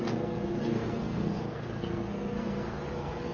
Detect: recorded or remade remade